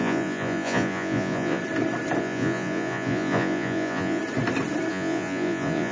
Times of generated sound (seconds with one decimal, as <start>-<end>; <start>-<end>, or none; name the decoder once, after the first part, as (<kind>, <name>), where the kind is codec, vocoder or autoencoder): 0.0-1.6 (vocoder, Vocos); 2.2-4.2; 4.9-5.9